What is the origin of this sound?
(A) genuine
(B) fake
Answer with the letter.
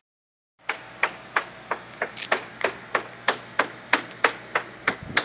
A